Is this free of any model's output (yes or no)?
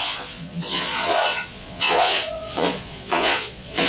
no